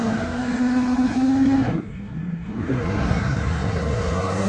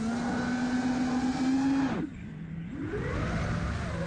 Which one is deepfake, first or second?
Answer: first